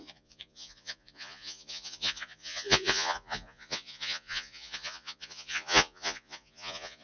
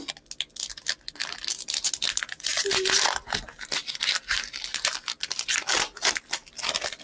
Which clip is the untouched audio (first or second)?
second